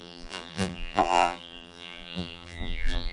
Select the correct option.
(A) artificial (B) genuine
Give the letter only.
A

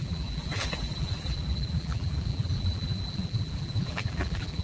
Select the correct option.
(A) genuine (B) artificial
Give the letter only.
B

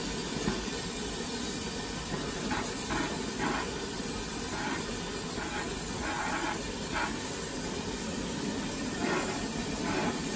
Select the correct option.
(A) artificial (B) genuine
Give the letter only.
B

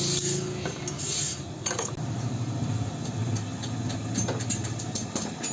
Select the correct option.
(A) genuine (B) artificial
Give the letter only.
A